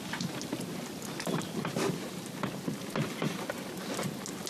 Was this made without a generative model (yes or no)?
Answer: yes